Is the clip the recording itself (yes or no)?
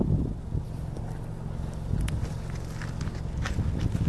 yes